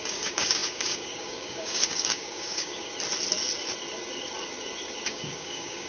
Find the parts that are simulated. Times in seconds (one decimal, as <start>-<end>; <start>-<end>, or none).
0.0-2.9; 5.1-5.9